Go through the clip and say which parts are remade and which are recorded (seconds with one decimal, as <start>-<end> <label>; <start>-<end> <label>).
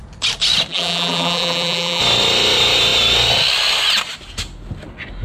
0.0-0.7 recorded; 0.7-2.0 remade; 2.0-5.2 recorded